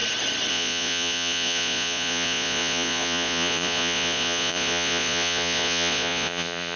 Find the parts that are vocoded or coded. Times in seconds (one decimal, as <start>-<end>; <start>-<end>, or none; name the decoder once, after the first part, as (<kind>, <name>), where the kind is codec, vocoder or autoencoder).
0.5-6.8 (vocoder, Vocos)